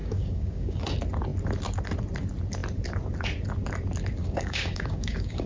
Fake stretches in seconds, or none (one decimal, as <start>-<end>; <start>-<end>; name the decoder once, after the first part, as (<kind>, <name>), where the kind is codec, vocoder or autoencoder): 0.0-0.8 (codec, DAC); 4.2-5.5